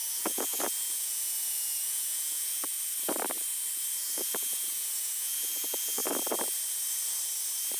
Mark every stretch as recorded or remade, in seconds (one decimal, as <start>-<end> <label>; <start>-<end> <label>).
0.0-2.7 remade; 2.7-4.0 recorded; 4.0-6.0 remade; 6.0-7.8 recorded

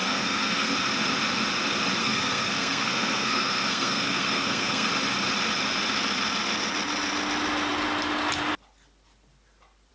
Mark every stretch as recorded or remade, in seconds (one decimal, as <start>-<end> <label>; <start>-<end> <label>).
0.0-0.7 remade; 0.7-2.0 recorded; 2.0-4.9 remade; 4.9-9.9 recorded

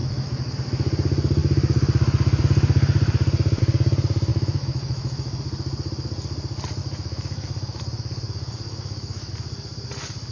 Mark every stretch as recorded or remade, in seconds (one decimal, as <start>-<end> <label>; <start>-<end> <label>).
0.0-0.5 remade; 0.5-4.3 recorded; 4.3-5.4 remade; 5.4-6.8 recorded; 6.8-9.3 remade; 9.3-10.3 recorded

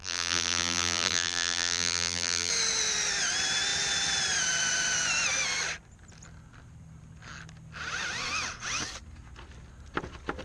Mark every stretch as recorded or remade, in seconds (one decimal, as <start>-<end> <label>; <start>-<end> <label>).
0.0-2.5 remade; 2.5-10.4 recorded

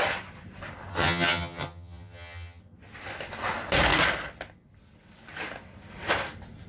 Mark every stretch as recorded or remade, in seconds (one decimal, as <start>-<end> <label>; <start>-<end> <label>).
0.0-0.9 recorded; 0.9-2.6 remade; 2.6-6.7 recorded

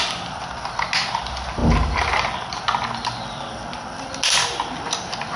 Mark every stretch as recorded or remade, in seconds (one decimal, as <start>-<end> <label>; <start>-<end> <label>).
0.0-5.4 recorded

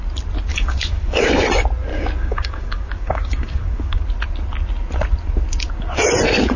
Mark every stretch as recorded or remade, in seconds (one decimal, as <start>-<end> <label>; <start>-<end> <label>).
0.0-0.5 recorded; 0.5-1.3 remade; 1.3-1.9 recorded; 1.9-4.0 remade; 4.0-6.6 recorded

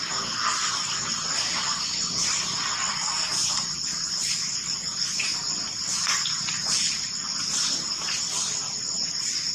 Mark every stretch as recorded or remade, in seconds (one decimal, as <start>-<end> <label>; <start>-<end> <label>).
0.0-3.4 recorded; 3.4-4.3 remade; 4.3-9.5 recorded